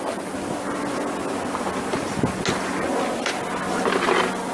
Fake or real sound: real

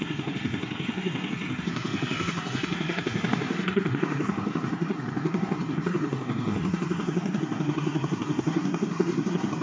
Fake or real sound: fake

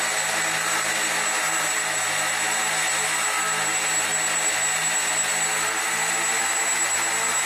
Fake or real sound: real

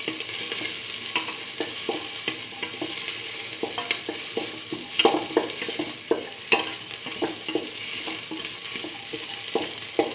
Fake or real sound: real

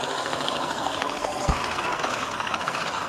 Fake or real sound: fake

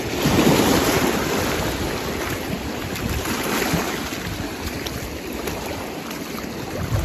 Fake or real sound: real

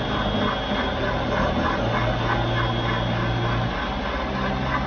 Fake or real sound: real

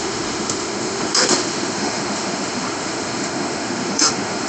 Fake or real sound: fake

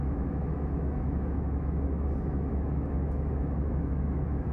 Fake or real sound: fake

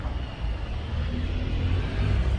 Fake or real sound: real